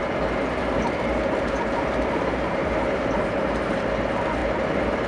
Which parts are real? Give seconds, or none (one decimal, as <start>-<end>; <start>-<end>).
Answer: 0.0-0.6; 3.7-4.4